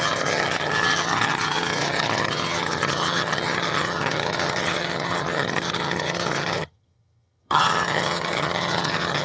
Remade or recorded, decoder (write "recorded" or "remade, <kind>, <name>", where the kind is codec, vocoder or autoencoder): remade, vocoder, HiFi-GAN